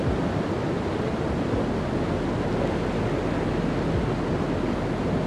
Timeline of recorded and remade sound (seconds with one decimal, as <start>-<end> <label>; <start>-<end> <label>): 0.0-5.3 recorded